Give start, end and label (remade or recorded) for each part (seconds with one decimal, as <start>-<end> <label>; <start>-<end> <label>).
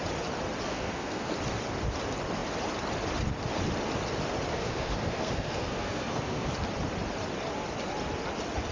0.0-0.7 recorded; 0.7-1.3 remade; 1.3-4.5 recorded; 4.5-6.5 remade; 6.5-8.7 recorded